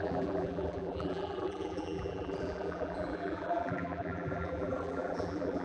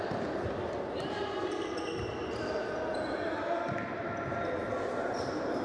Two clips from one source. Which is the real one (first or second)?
second